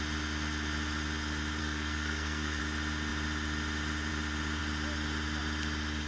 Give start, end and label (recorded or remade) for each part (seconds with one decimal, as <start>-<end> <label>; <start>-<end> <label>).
0.0-1.6 recorded; 1.6-2.6 remade; 2.6-6.1 recorded